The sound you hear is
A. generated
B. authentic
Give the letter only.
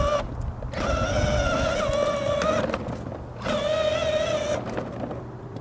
B